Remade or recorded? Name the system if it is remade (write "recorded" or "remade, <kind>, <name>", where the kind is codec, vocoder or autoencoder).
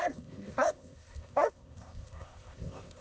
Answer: remade, codec, ZipCodec